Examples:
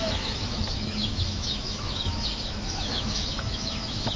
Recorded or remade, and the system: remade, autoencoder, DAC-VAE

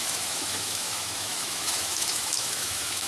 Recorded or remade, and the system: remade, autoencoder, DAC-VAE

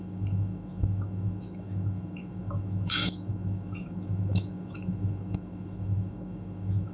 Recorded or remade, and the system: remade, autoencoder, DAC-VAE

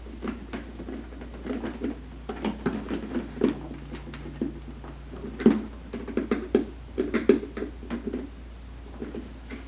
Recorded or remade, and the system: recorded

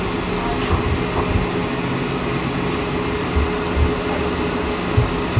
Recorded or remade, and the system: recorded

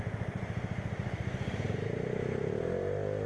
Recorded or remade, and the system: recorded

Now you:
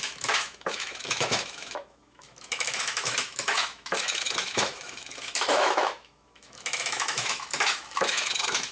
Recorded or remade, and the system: remade, autoencoder, DAC-VAE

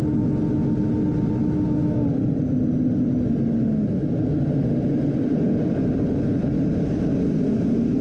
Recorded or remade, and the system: recorded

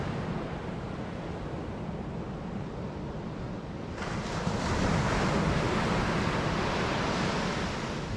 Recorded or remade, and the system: recorded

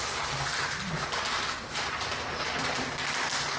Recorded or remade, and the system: recorded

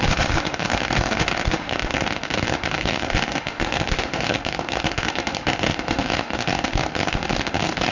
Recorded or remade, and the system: remade, autoencoder, DAC-VAE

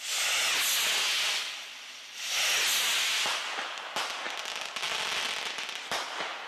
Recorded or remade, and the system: recorded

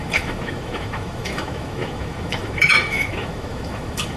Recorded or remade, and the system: remade, autoencoder, DAC-VAE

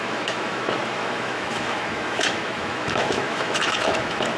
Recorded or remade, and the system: remade, autoencoder, DAC-VAE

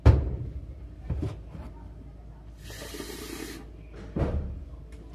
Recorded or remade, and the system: recorded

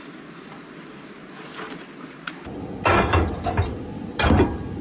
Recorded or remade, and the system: recorded